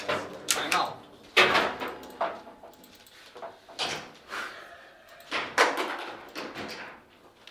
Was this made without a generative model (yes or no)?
yes